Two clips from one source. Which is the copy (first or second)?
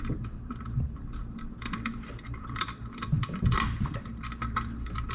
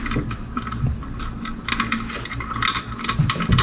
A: first